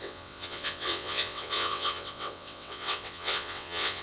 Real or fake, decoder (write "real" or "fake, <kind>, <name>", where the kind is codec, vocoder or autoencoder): fake, vocoder, WaveNeXt